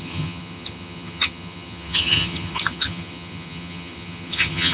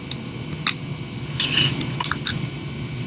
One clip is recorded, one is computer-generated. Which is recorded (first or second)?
second